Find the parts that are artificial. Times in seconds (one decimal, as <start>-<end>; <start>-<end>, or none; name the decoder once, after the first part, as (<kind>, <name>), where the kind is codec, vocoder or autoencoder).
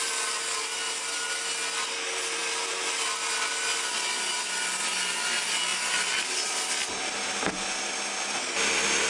none